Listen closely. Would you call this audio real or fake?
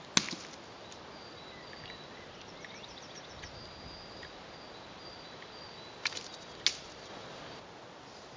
real